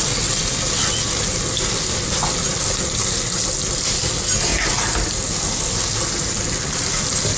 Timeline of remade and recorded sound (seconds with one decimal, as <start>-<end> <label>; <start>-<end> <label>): 0.0-7.4 recorded